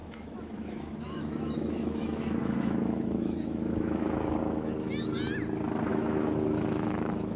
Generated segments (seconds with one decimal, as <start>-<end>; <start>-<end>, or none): 0.0-4.3; 5.9-7.4